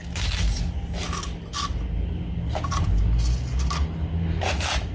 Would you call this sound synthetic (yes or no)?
no